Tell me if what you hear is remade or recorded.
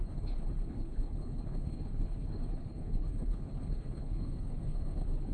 remade